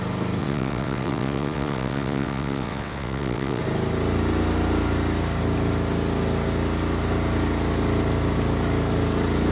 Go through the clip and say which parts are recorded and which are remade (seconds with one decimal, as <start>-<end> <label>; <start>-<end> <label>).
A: 0.0-0.4 recorded; 0.4-3.6 remade; 3.6-9.5 recorded